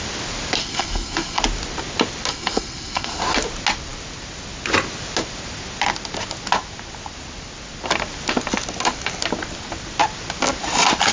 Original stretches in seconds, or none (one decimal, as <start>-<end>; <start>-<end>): 0.0-0.6; 1.4-2.3; 3.2-11.1